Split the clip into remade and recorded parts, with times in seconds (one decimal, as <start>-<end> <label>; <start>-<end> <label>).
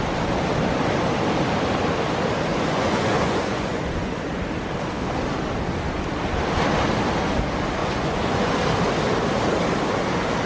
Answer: 0.0-2.5 recorded; 2.5-4.2 remade; 4.2-7.8 recorded; 7.8-8.5 remade; 8.5-10.5 recorded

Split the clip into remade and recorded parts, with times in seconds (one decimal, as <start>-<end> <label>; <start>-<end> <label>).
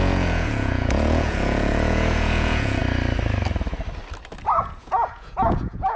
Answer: 0.0-2.8 remade; 2.8-4.6 recorded; 4.6-6.0 remade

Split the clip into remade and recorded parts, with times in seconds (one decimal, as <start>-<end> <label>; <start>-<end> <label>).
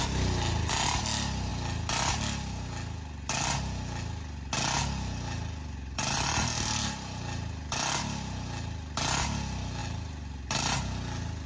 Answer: 0.0-11.5 recorded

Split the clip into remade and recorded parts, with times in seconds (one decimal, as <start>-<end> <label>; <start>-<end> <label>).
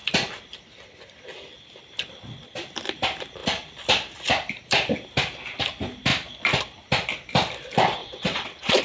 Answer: 0.0-8.0 recorded; 8.0-8.8 remade